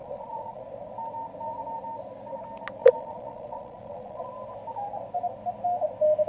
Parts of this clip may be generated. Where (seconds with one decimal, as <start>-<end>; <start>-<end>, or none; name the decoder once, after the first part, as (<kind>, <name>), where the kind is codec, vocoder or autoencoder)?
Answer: 0.0-0.6 (vocoder, Vocos); 2.8-4.3